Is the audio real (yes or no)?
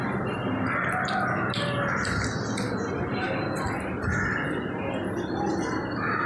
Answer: yes